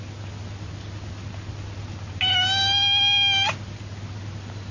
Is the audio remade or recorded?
recorded